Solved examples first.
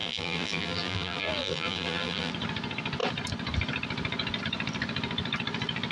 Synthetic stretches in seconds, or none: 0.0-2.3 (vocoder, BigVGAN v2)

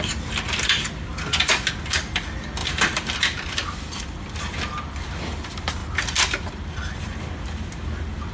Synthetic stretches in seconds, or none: 0.0-1.1 (vocoder, BigVGAN v2); 1.8-5.8; 6.5-8.3

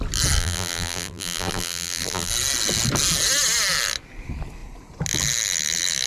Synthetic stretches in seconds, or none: 0.4-2.3 (vocoder, BigVGAN v2)

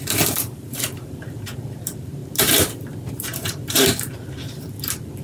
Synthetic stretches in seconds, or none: 0.0-5.2 (vocoder, BigVGAN v2)

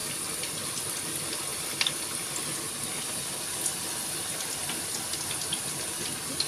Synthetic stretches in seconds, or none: none

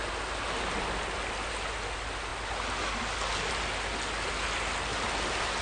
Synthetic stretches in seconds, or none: none